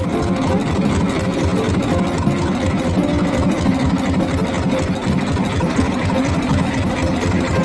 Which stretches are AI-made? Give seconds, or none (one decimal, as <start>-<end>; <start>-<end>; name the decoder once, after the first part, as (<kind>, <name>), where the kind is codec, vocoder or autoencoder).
5.0-7.6 (vocoder, BigVGAN v2)